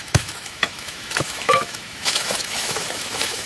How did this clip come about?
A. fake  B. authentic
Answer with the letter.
A